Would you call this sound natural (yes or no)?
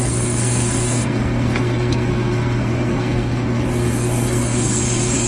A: no